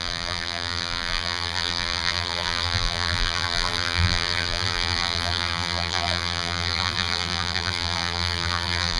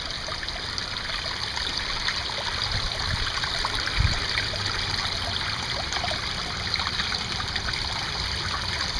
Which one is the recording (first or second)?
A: second